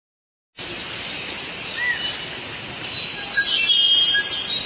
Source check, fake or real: real